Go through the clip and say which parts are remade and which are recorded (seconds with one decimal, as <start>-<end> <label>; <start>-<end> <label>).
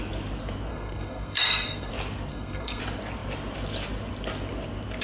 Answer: 0.0-0.7 recorded; 0.7-1.9 remade; 1.9-2.3 recorded; 2.3-2.8 remade; 2.8-5.0 recorded